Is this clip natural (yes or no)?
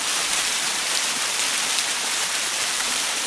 no